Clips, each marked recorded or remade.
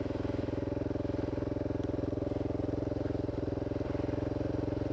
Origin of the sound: recorded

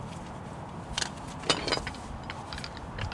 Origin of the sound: recorded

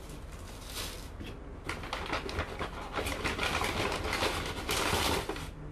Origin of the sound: recorded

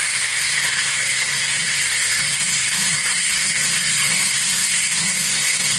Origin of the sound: remade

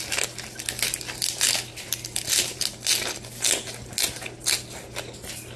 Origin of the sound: recorded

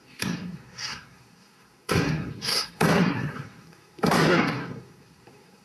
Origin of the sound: remade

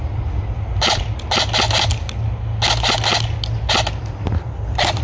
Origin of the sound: recorded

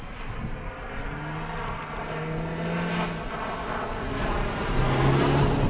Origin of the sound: recorded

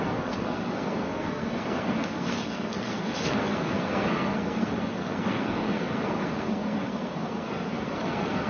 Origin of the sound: remade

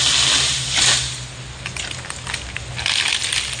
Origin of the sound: recorded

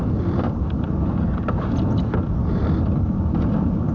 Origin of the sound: recorded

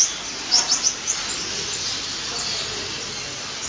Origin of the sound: recorded